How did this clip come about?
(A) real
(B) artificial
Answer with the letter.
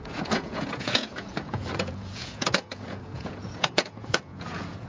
B